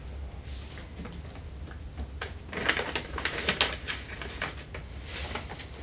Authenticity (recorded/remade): recorded